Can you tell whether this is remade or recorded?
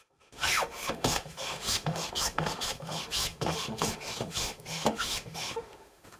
remade